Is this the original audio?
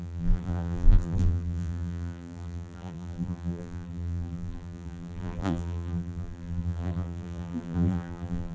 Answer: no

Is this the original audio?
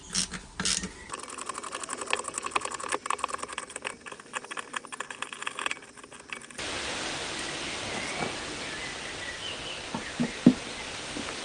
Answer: yes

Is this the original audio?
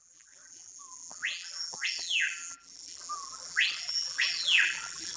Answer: no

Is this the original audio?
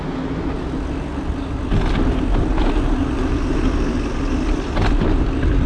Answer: yes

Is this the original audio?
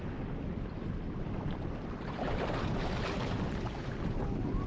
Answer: no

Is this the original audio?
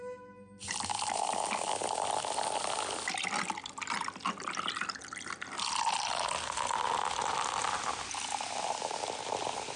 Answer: yes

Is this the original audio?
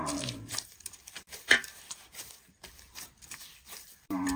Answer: no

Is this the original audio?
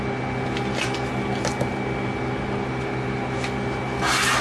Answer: yes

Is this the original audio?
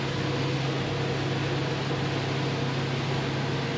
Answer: yes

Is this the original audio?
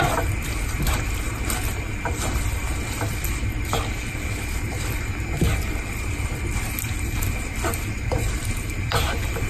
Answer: no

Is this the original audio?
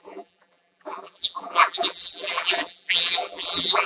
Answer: no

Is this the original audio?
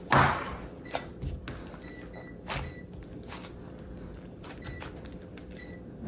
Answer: yes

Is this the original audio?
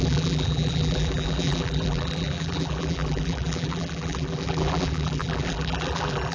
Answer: no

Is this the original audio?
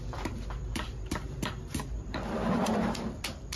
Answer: no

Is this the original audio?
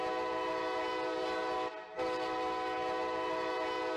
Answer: yes